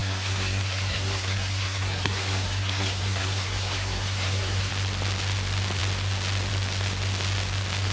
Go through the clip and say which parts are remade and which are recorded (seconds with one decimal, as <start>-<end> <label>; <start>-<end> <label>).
0.0-4.7 remade; 4.7-7.9 recorded